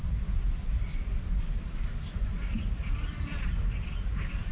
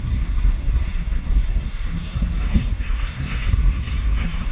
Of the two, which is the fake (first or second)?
second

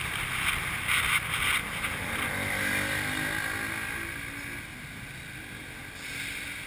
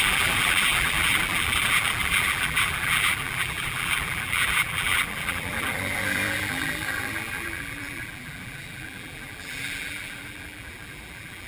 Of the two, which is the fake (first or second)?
second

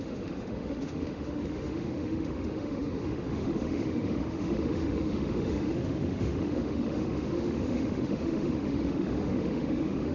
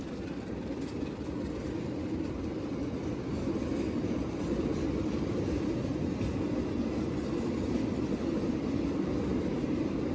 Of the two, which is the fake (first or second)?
first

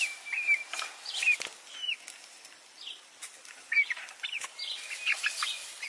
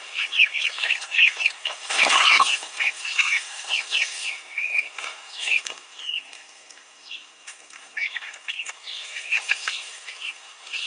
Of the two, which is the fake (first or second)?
second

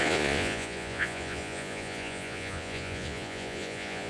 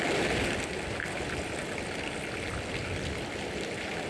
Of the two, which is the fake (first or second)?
first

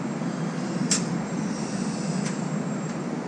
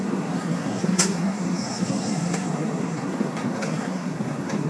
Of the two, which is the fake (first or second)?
second